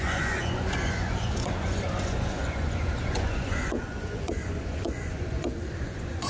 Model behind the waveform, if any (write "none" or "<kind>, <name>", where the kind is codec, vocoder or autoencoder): vocoder, Vocos